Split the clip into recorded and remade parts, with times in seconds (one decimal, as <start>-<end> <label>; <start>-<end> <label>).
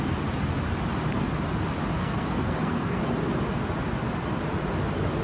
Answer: 0.0-2.0 recorded; 2.0-3.0 remade; 3.0-5.2 recorded